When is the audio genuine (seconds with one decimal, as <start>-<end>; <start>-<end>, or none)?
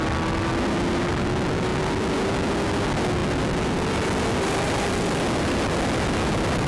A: 0.0-6.7